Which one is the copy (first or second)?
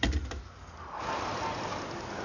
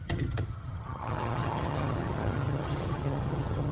second